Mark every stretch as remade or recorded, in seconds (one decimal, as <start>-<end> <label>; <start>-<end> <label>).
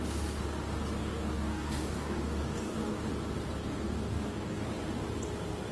0.0-1.0 recorded; 1.0-3.1 remade; 3.1-3.6 recorded; 3.6-4.6 remade; 4.6-5.7 recorded